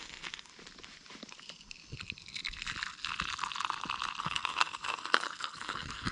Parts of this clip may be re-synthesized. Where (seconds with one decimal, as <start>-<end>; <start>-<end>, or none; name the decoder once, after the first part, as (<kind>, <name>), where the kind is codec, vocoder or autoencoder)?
0.0-0.5 (codec, SNAC); 4.2-6.1